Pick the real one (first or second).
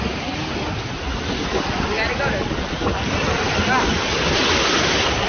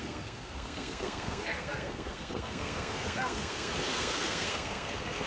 first